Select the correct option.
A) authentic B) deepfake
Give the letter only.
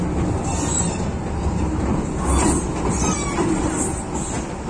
A